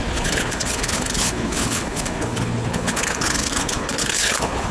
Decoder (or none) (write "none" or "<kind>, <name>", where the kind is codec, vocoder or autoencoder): codec, HILCodec